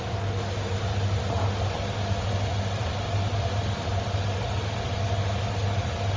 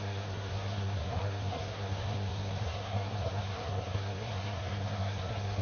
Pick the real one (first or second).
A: first